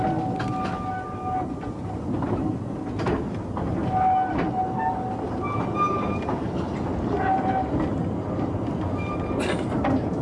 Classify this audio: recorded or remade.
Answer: recorded